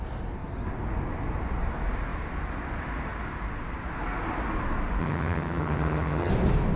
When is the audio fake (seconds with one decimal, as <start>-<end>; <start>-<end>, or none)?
5.0-6.3